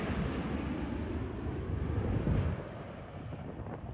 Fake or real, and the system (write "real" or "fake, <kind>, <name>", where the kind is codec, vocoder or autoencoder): real